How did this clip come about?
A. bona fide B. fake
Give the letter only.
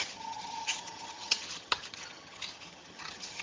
B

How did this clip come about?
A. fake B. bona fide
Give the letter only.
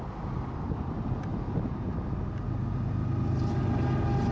B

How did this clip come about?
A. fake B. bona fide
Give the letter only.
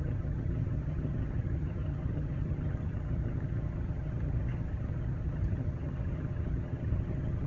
A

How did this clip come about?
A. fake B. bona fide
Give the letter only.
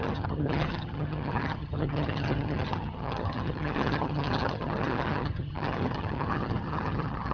A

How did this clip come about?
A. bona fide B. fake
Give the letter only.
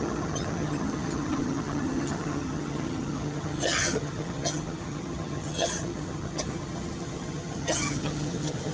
B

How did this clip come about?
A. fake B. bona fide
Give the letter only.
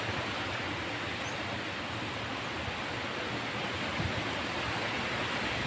B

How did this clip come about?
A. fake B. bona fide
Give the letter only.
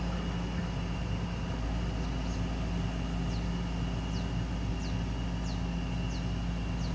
B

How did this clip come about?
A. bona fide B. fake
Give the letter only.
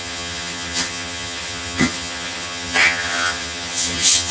B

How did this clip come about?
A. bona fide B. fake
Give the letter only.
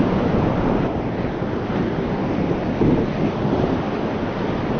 A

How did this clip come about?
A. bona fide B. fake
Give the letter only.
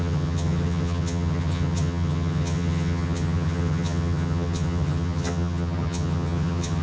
B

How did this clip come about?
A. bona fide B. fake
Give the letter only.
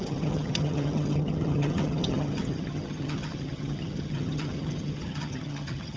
B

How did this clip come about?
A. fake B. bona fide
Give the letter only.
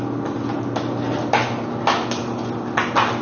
B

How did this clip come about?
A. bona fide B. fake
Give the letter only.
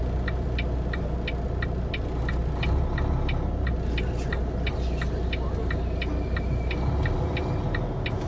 A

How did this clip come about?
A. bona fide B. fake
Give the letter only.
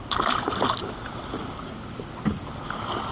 A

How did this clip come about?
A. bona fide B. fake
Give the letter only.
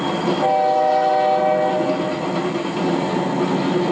A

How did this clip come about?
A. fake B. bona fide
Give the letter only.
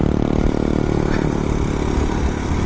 B